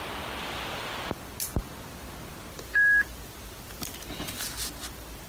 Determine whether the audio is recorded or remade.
recorded